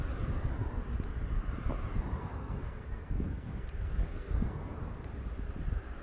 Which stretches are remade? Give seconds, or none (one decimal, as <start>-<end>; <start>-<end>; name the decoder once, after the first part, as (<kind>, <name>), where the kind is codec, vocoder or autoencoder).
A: 2.2-4.8 (codec, SNAC)